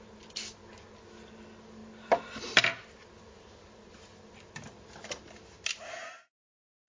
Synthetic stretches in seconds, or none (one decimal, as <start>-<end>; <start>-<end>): none